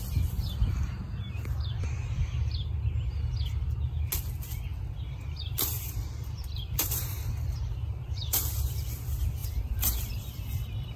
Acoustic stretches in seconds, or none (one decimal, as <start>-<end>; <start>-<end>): 0.0-4.7; 8.4-9.4